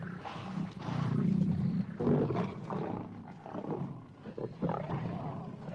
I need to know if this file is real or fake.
real